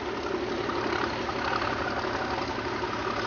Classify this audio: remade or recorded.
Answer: recorded